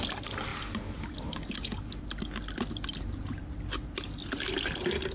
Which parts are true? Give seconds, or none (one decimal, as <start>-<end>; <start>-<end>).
0.0-5.1